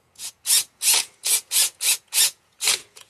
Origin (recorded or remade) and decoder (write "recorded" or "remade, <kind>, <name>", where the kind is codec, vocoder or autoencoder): remade, vocoder, Vocos